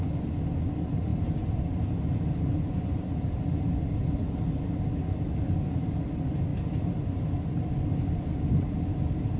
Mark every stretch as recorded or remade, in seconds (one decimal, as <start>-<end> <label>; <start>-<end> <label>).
0.0-9.4 recorded